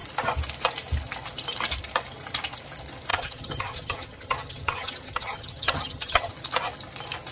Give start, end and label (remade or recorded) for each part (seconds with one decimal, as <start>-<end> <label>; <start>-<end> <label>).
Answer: 0.0-3.1 recorded; 3.1-6.3 remade; 6.3-7.3 recorded